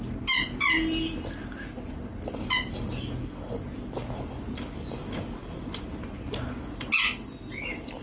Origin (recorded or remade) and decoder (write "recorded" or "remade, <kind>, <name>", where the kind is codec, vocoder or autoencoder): recorded